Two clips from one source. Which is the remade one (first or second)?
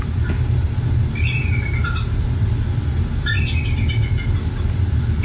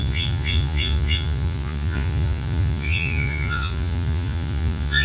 second